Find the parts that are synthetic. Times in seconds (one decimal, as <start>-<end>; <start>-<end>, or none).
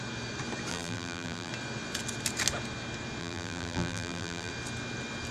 0.7-1.5; 3.2-4.5